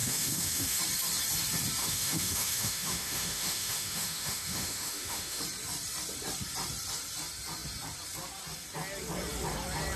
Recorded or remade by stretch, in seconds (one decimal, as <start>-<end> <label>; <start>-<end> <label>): 0.0-0.8 remade; 0.8-1.8 recorded; 1.8-5.4 remade; 5.4-10.0 recorded